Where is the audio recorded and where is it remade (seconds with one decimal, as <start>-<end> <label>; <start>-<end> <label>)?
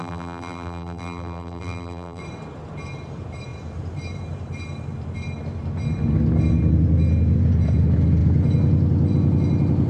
0.0-2.2 remade; 2.2-9.9 recorded